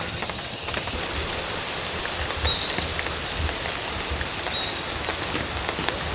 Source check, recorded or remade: recorded